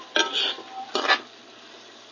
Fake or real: real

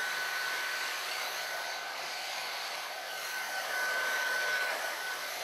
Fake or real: fake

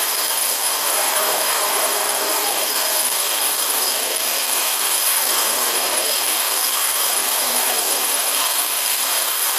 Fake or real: fake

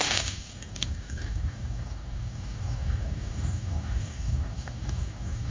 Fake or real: fake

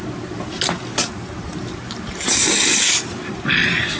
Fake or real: real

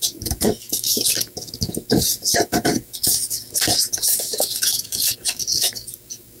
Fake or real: fake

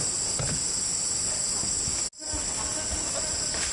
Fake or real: real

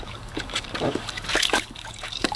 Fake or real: fake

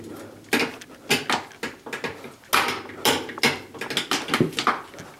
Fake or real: real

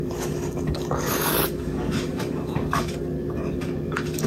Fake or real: fake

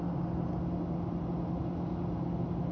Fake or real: real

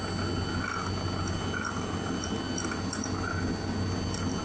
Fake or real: real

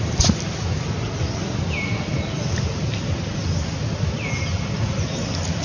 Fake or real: real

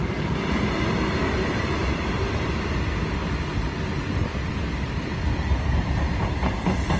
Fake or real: real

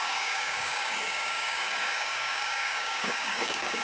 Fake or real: fake